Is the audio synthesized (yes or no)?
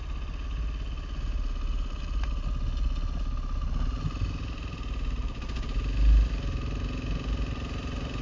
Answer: no